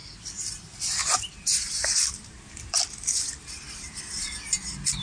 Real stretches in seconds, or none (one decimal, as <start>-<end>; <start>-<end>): 0.0-1.0; 4.0-5.0